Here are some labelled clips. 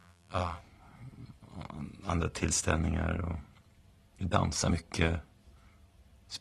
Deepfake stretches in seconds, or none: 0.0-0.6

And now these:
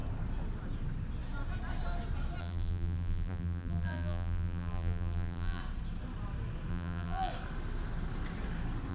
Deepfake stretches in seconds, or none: 2.4-5.6; 6.7-7.3